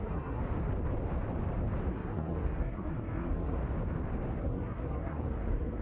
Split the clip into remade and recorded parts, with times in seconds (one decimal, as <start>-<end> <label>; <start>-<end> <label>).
0.0-0.4 remade; 0.4-1.9 recorded; 1.9-3.6 remade; 3.6-4.4 recorded; 4.4-5.8 remade